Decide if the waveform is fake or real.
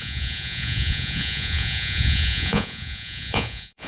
fake